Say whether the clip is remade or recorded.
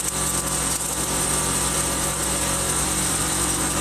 recorded